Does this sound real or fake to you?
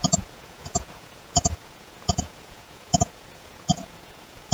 fake